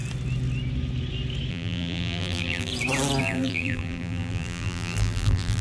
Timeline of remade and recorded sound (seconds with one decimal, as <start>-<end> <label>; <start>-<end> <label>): 0.0-1.5 recorded; 1.5-2.7 remade; 2.7-3.2 recorded; 3.2-5.6 remade